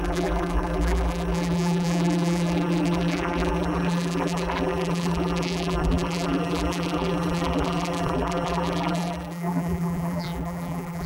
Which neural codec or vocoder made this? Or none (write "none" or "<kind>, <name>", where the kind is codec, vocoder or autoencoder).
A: vocoder, BigVGAN v2